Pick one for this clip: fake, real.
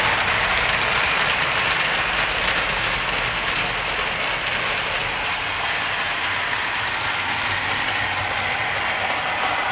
real